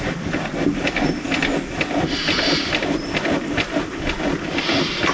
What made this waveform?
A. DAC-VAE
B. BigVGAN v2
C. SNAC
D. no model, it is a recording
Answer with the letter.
D